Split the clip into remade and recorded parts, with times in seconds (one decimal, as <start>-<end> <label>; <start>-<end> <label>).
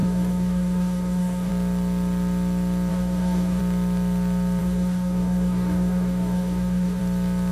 0.0-1.5 remade; 1.5-2.9 recorded; 2.9-3.6 remade; 3.6-4.6 recorded; 4.6-7.0 remade; 7.0-7.5 recorded